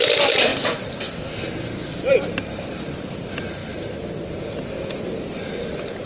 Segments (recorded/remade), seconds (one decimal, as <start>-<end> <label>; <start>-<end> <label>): 0.0-6.1 recorded